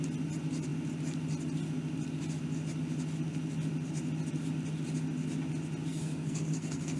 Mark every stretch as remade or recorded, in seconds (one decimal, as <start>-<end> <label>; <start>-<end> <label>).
0.0-5.9 recorded; 5.9-7.0 remade